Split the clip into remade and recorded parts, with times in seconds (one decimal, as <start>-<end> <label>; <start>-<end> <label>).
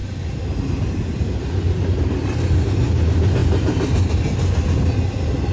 0.0-5.5 recorded